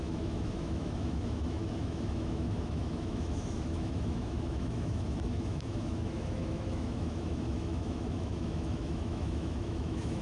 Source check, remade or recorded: remade